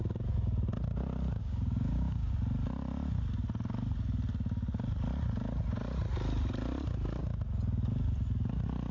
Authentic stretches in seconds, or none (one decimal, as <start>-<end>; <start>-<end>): 0.0-1.4; 2.3-8.9